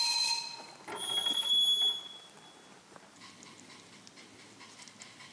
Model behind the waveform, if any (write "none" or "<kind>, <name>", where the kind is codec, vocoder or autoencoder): none